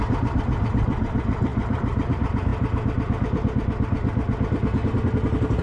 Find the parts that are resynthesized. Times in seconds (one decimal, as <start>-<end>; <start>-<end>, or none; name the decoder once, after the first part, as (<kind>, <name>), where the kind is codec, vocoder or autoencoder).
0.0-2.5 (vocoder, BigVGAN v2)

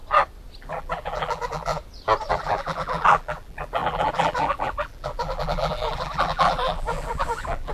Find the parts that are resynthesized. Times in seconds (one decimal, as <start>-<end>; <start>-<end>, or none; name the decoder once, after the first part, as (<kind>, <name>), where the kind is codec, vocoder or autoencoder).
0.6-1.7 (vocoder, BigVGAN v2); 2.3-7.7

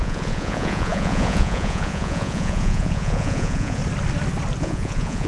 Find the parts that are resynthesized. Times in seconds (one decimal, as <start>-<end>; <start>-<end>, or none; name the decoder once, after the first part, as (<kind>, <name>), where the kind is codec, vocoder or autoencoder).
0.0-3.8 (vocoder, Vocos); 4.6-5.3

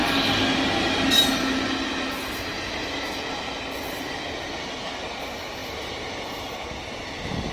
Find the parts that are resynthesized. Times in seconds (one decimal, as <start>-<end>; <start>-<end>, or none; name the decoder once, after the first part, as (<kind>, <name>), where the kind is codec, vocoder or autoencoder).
none

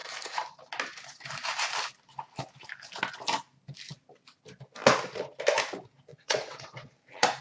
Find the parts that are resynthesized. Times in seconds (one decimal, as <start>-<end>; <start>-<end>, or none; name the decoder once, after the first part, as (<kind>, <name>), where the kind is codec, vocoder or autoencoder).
6.1-6.9 (vocoder, WaveNeXt)

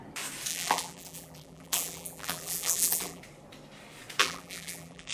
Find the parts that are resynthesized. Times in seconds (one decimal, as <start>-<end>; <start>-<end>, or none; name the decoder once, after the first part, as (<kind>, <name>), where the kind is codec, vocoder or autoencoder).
0.5-3.2 (vocoder, BigVGAN v2); 4.2-5.1